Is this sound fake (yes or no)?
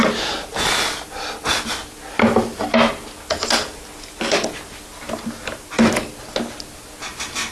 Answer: no